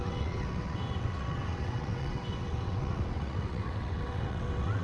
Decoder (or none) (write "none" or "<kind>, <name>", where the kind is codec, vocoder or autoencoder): vocoder, WaveNeXt